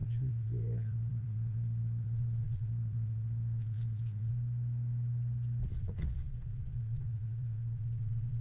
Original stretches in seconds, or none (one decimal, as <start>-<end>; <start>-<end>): 4.3-5.7